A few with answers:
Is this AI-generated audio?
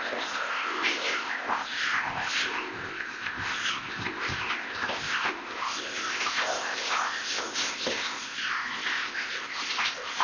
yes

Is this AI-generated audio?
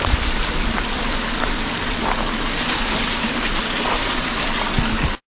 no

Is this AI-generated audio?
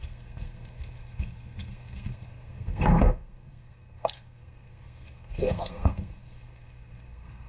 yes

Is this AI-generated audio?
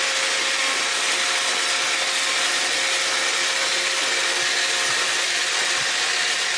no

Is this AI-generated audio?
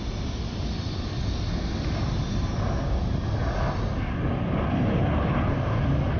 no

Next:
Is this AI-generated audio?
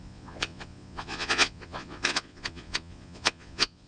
yes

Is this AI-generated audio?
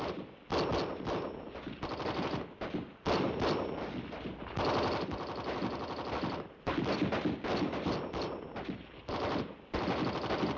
no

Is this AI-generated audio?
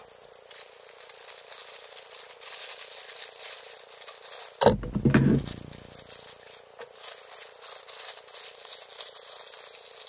no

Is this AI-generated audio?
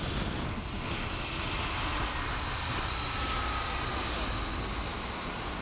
no